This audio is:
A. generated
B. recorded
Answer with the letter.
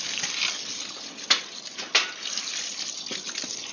B